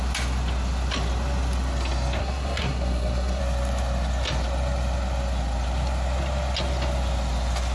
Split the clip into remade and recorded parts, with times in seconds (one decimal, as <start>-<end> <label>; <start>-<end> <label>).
0.0-2.2 recorded; 2.2-3.4 remade; 3.4-7.7 recorded